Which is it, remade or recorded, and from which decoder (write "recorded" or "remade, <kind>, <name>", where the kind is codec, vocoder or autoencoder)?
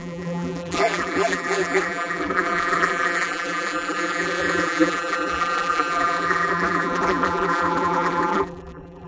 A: remade, vocoder, BigVGAN v2